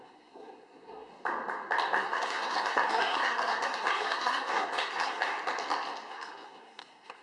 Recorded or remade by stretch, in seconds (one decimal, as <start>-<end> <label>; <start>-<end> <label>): 0.0-1.1 remade; 1.1-2.0 recorded; 2.0-5.3 remade; 5.3-6.1 recorded; 6.1-7.2 remade